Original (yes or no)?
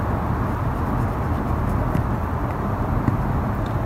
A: yes